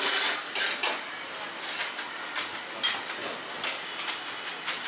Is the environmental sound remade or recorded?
recorded